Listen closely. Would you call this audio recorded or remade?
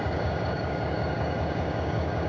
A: remade